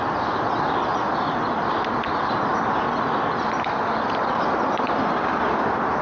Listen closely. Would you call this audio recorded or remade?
recorded